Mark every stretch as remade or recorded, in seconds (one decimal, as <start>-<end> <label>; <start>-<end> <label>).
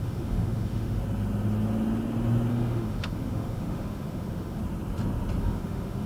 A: 0.0-1.0 remade; 1.0-2.5 recorded; 2.5-4.6 remade; 4.6-5.4 recorded; 5.4-6.1 remade